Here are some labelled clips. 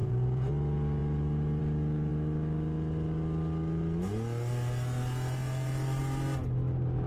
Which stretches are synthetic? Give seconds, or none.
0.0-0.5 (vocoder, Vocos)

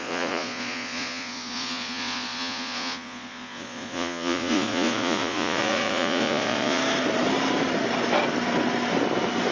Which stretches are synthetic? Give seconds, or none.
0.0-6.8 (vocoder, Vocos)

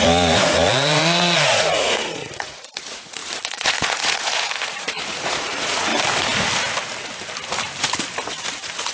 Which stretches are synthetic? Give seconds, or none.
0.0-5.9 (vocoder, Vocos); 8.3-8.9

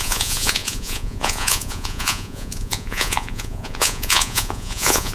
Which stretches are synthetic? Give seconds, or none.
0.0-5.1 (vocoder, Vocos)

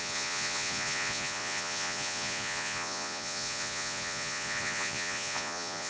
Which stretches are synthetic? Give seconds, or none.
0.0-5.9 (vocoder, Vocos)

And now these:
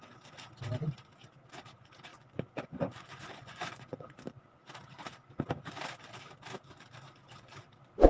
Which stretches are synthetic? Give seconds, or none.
2.1-4.6 (vocoder, Vocos)

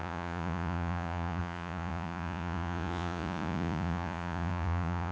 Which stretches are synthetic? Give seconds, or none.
0.0-5.1 (vocoder, Vocos)

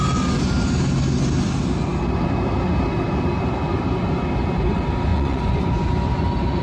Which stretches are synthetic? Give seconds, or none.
5.1-5.7 (vocoder, Vocos)